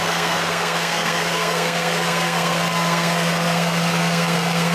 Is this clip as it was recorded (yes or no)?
no